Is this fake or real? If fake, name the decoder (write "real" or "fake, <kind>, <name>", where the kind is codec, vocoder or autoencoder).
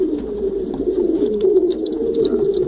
fake, vocoder, BigVGAN v2